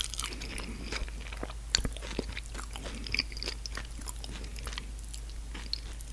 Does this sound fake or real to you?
real